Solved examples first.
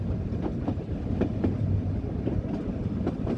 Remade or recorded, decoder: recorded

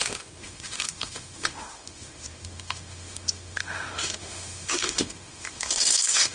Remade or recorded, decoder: remade, autoencoder, DAC-VAE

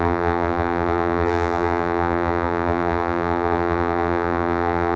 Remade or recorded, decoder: remade, vocoder, BigVGAN v2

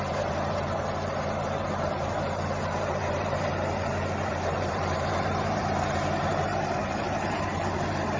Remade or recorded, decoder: remade, vocoder, BigVGAN v2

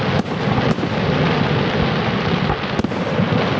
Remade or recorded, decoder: recorded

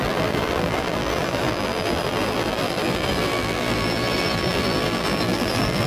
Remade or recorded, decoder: remade, vocoder, BigVGAN v2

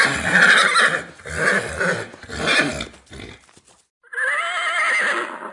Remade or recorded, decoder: recorded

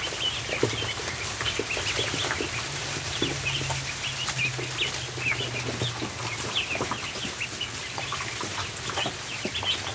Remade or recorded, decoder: recorded